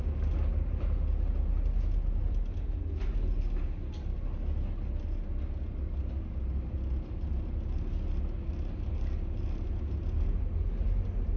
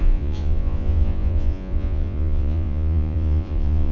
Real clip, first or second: first